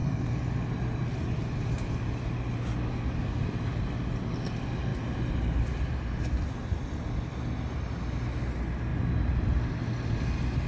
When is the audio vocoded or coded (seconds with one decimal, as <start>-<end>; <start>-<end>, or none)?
none